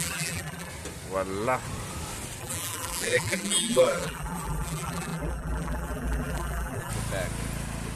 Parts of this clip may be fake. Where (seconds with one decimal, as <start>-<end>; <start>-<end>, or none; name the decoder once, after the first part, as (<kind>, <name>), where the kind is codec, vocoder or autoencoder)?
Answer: 0.0-0.7 (vocoder, BigVGAN v2); 2.4-6.9